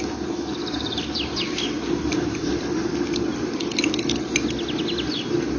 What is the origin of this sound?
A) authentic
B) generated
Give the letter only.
A